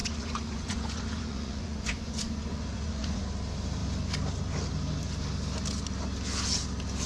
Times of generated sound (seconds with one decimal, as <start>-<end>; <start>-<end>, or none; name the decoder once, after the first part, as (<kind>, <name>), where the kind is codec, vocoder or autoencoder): 0.0-3.2 (vocoder, Vocos)